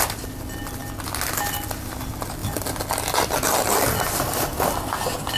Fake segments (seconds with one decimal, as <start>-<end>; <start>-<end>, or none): none